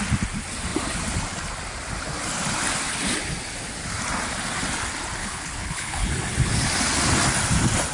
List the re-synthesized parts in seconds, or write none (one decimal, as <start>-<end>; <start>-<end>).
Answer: 5.2-6.1